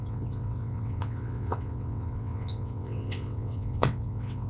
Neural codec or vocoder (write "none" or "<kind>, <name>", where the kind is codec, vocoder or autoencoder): vocoder, WaveNeXt